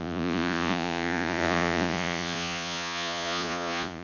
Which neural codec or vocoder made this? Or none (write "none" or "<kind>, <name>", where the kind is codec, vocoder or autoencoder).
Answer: vocoder, Vocos